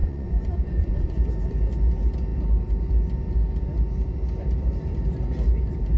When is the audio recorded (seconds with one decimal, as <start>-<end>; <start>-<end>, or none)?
1.2-6.0